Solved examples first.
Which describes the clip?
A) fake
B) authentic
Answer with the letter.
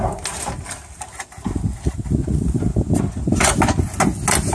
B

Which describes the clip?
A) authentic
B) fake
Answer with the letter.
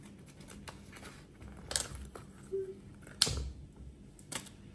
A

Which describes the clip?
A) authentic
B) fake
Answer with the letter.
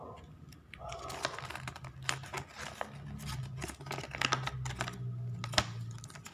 A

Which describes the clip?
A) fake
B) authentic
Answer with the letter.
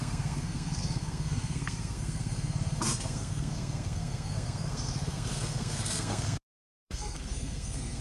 A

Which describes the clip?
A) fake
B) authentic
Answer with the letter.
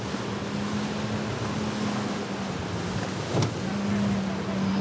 B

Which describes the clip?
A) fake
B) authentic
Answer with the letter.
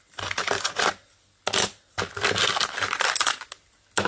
B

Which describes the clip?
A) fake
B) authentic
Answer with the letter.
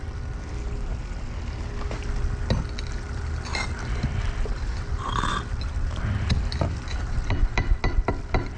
B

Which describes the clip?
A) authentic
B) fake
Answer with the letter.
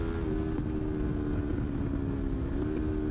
A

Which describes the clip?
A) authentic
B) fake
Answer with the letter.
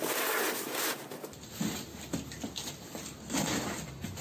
A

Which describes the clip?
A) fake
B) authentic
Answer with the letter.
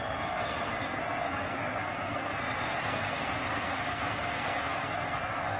A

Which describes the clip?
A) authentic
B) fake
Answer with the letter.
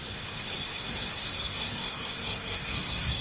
B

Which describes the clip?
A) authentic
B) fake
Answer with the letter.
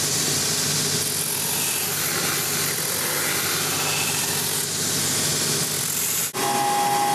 A